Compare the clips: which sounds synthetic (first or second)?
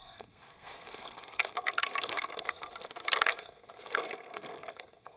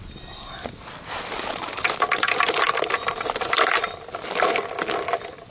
first